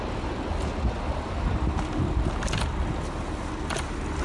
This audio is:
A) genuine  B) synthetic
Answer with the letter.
A